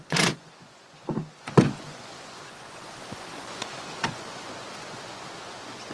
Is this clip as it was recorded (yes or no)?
no